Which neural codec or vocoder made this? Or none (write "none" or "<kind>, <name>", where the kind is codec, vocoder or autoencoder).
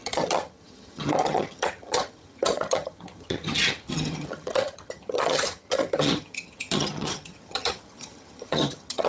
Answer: vocoder, HiFi-GAN